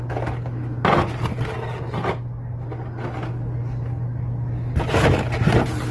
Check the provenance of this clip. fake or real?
real